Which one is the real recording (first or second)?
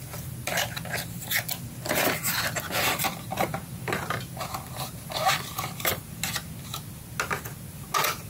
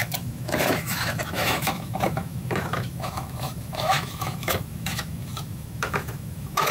first